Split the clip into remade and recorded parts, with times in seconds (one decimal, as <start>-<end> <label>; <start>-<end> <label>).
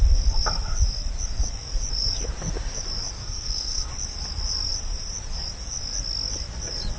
0.0-3.2 recorded; 3.2-3.9 remade; 3.9-7.0 recorded